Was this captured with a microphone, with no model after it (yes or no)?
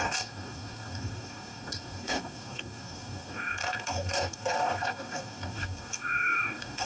no